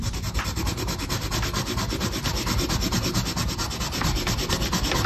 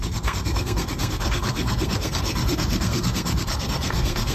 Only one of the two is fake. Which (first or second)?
second